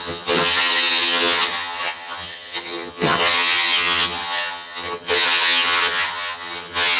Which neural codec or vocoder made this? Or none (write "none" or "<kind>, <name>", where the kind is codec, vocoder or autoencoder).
vocoder, HiFi-GAN